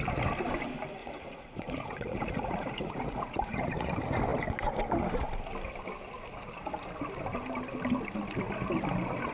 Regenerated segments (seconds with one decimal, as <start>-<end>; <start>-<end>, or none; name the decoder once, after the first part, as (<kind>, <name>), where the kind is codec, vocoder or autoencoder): 1.0-3.9 (vocoder, Vocos)

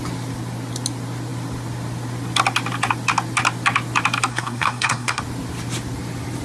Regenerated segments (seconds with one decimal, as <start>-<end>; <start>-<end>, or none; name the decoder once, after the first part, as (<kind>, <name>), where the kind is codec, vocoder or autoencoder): 4.3-5.2 (codec, SNAC)

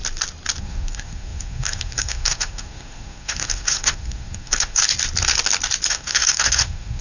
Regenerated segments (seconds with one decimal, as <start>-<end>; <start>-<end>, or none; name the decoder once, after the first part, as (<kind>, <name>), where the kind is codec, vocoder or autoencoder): 0.6-4.8 (codec, SNAC); 5.9-7.0

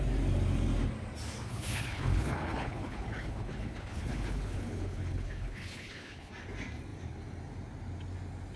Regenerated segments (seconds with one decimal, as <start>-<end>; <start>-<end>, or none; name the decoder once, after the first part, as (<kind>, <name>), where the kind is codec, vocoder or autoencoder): 1.5-6.3 (codec, HILCodec)

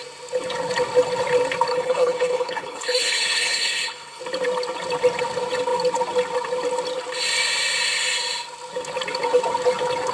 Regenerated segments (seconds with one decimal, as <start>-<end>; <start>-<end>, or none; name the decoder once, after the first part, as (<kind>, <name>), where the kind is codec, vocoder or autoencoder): 1.7-4.2 (codec, HILCodec)

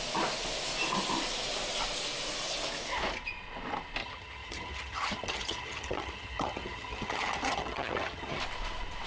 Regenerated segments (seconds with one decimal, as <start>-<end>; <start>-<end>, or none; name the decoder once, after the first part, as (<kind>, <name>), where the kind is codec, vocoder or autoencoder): 4.0-8.4 (vocoder, HiFi-GAN)

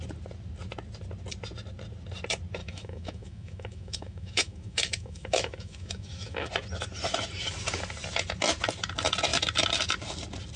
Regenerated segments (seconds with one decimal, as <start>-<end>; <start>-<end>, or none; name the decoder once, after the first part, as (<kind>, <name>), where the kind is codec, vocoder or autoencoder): 2.6-6.5 (autoencoder, DAC-VAE)